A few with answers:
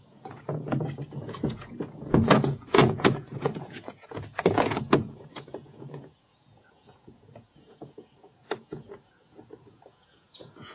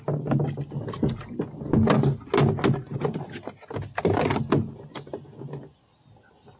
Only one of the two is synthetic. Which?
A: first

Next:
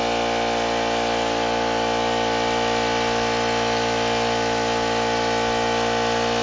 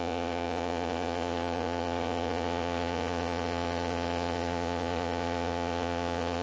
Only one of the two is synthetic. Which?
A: second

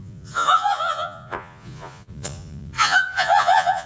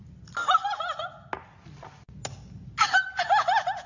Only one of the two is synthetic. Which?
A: first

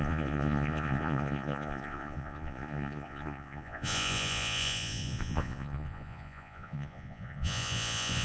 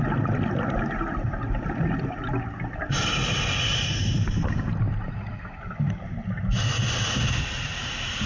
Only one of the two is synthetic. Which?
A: first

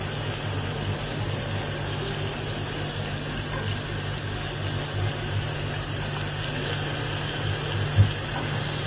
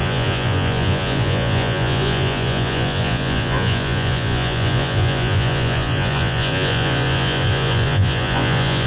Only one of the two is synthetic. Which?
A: second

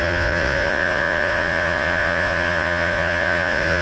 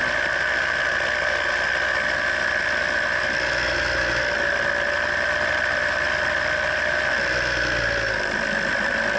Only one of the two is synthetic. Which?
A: first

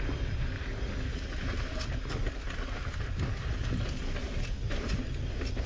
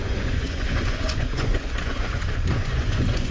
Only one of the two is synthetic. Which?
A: second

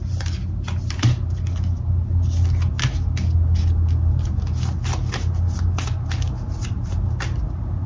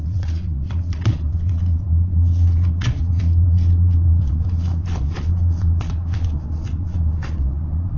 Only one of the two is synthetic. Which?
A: second